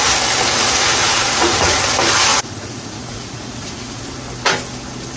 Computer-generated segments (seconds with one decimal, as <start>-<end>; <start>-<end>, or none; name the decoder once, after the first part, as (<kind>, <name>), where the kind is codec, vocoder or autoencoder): 1.0-1.8 (vocoder, Vocos); 2.3-4.0